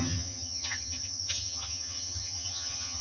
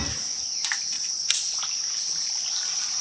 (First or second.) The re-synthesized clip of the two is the first